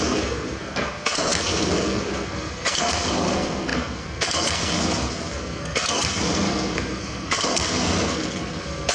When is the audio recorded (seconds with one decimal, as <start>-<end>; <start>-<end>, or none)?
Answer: none